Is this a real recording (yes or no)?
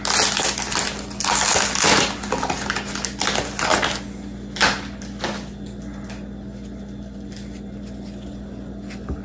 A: yes